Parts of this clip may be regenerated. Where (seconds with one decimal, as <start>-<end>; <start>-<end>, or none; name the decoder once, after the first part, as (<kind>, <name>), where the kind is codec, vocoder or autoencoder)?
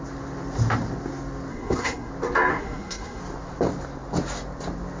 1.5-2.1 (codec, SNAC); 2.5-3.2